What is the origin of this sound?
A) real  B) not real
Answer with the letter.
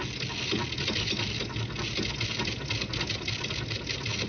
A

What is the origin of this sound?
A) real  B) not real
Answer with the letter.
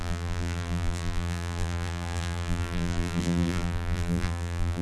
B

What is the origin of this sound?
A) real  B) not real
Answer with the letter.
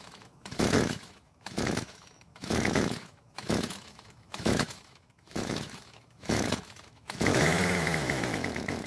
B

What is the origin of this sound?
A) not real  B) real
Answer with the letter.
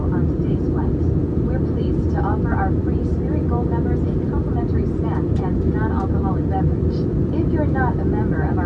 B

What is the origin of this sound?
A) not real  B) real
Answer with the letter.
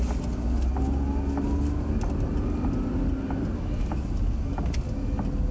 B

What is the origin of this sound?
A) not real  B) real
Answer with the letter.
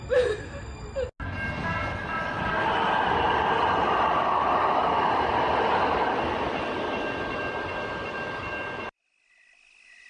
B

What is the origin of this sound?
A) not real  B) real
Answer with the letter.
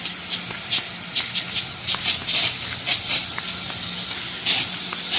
B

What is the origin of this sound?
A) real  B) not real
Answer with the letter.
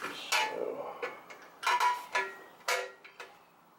A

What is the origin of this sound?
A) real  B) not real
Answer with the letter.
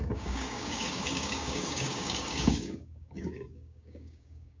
B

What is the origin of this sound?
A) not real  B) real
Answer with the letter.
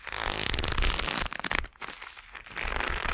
B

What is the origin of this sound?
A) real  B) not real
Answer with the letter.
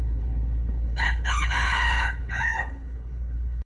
B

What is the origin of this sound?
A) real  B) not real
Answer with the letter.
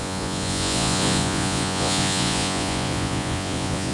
B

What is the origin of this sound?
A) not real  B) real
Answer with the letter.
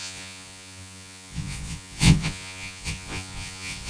A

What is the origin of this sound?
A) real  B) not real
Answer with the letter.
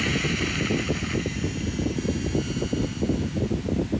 A